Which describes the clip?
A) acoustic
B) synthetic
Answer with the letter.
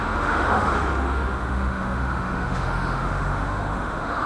B